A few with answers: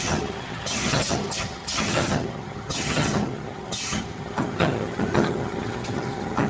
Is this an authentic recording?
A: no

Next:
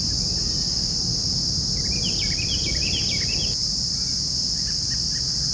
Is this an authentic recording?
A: yes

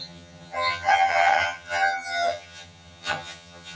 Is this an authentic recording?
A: no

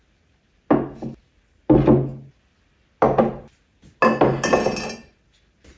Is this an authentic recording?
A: yes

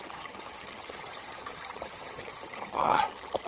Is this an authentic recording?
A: no